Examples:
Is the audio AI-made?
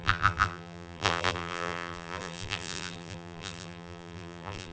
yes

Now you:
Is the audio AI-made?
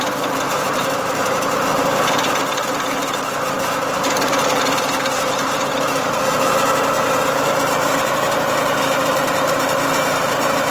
yes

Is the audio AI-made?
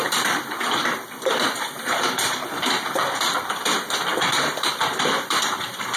yes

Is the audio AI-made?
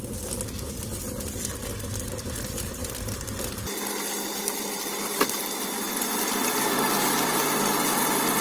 no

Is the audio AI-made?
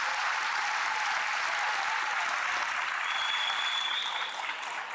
no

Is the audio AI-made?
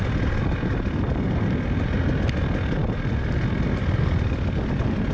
no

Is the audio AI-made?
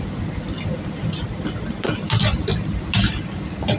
no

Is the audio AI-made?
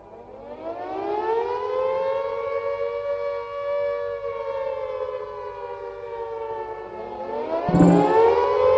no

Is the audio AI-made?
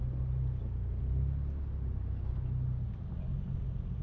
no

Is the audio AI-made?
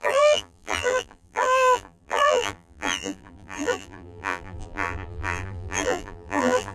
yes